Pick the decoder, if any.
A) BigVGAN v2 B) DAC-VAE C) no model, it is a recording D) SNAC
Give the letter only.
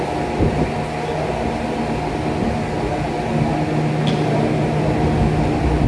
C